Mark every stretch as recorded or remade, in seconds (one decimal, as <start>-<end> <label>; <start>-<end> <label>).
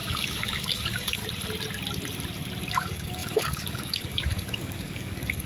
0.0-1.2 remade; 1.2-2.7 recorded; 2.7-5.5 remade